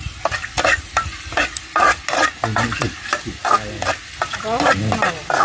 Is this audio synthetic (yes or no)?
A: no